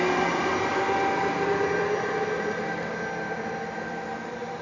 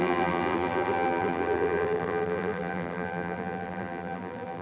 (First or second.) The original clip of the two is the first